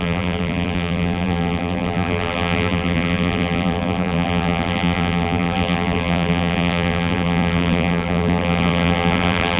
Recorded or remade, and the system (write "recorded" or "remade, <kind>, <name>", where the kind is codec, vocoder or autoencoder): remade, vocoder, BigVGAN v2